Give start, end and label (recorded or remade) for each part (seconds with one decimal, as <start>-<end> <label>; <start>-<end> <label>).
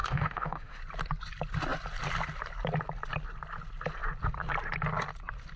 0.0-0.8 remade; 0.8-5.6 recorded